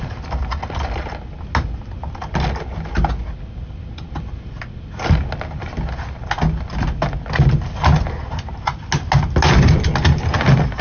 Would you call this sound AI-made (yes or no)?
no